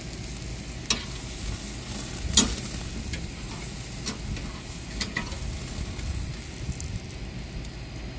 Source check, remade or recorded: recorded